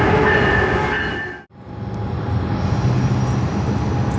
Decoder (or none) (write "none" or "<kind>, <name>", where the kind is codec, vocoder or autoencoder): none